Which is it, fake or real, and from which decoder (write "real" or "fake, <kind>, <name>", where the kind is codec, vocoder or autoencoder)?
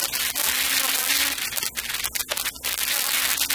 real